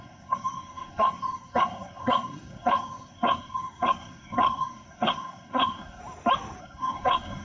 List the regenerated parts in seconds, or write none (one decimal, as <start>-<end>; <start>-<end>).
0.0-6.0; 6.6-7.4